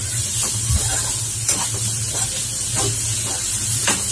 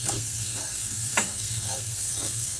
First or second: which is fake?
second